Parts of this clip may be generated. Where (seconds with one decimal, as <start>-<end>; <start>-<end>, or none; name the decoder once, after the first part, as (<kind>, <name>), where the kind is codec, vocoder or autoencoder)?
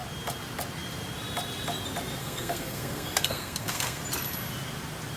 2.2-4.0 (codec, SNAC)